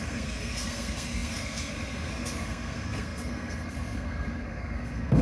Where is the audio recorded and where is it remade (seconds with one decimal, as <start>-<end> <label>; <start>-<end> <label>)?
0.0-5.2 remade